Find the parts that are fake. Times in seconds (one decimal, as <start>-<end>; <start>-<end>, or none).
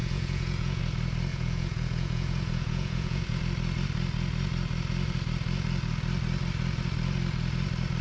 0.0-0.8; 1.3-3.4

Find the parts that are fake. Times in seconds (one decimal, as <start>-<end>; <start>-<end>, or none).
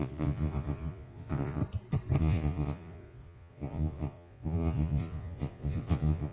0.0-1.6; 2.2-6.3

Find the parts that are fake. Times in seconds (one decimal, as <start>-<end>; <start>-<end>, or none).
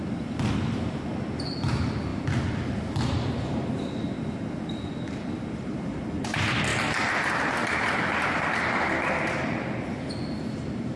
none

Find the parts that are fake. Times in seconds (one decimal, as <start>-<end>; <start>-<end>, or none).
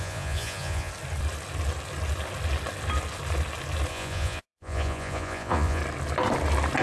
0.0-0.9; 3.9-5.8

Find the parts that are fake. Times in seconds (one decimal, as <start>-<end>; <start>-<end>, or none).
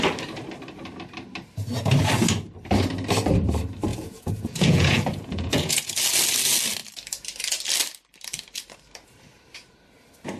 3.9-5.9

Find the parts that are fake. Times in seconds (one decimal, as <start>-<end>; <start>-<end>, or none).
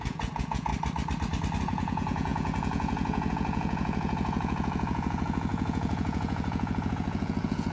0.0-0.7; 1.6-7.7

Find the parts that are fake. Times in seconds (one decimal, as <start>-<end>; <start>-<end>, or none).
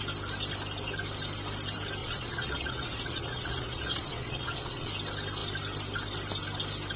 2.0-4.9